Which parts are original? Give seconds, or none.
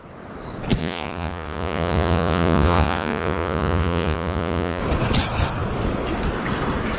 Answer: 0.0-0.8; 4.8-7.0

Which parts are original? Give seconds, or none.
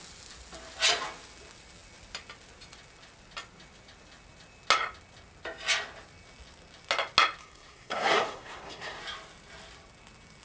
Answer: 0.0-7.4; 9.0-10.4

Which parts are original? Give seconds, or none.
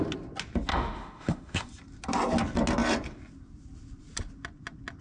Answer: 0.0-0.7; 1.7-5.0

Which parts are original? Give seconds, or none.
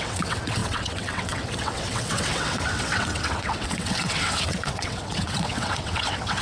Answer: none